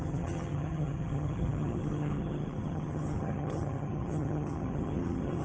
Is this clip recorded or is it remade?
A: remade